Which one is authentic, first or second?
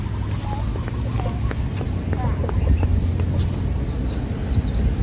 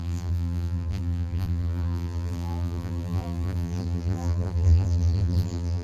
first